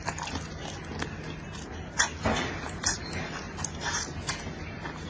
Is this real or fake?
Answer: real